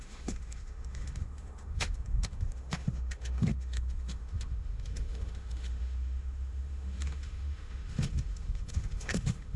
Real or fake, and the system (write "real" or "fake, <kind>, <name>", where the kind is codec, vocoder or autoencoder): fake, autoencoder, DAC-VAE